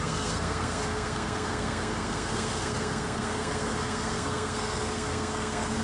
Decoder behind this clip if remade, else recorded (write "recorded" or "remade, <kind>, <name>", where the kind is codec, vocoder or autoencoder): remade, codec, SNAC